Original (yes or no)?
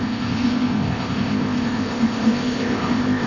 no